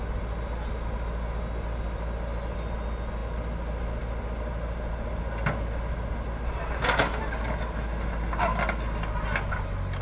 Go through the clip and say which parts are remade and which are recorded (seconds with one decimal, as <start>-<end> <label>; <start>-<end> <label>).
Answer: 0.0-10.0 recorded